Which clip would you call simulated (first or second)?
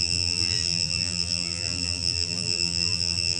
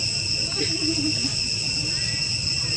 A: first